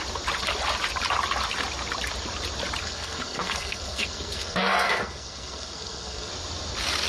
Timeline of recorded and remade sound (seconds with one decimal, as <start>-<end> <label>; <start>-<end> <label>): 0.0-2.8 recorded; 2.8-6.3 remade; 6.3-7.1 recorded